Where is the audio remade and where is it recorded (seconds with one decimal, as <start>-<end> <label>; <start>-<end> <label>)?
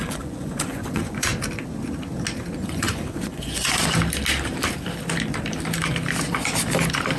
0.0-1.3 remade; 1.3-2.6 recorded; 2.6-3.8 remade; 3.8-7.2 recorded